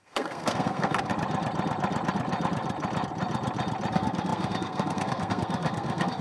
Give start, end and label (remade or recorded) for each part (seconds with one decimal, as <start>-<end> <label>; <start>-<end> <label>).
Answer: 0.0-1.1 remade; 1.1-3.9 recorded; 3.9-6.2 remade